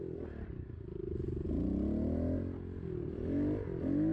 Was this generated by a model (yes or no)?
no